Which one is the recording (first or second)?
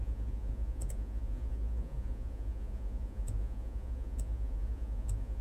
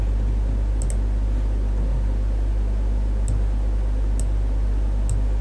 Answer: second